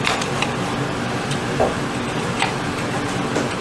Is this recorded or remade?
remade